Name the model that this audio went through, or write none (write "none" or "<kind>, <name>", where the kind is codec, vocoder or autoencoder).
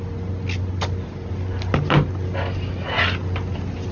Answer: none